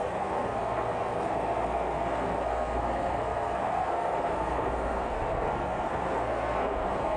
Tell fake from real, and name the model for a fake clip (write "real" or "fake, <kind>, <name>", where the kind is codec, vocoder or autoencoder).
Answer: fake, codec, SNAC